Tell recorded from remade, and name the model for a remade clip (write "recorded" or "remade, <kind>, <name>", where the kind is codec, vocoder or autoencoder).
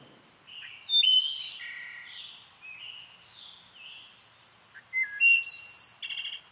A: recorded